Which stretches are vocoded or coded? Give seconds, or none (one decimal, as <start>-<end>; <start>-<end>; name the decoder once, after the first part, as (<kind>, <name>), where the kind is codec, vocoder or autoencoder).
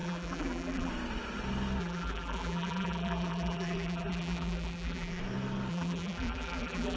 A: 0.0-0.9 (vocoder, BigVGAN v2); 1.8-5.2; 5.7-7.0